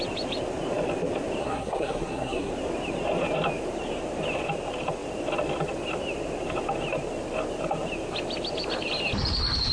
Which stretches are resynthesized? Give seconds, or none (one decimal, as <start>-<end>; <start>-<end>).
1.4-2.5